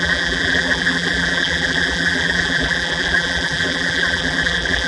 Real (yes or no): no